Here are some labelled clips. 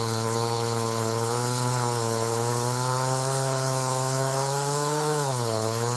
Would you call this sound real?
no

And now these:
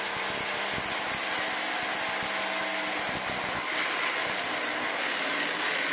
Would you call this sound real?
yes